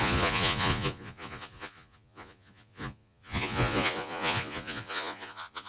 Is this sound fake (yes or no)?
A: yes